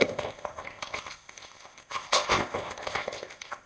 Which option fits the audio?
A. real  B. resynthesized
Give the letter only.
B